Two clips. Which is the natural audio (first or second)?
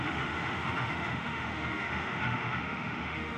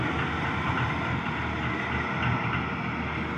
second